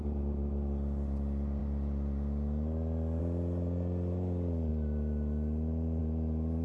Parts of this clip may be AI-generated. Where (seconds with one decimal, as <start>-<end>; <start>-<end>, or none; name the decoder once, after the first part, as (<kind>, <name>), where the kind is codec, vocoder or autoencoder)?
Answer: none